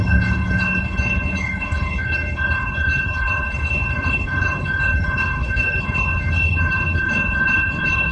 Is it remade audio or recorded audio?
remade